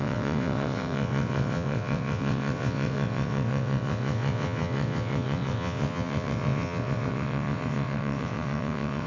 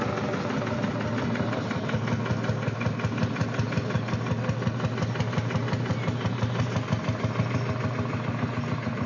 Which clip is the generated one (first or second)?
first